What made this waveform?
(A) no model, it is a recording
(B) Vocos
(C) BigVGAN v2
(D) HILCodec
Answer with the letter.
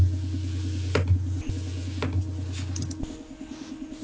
A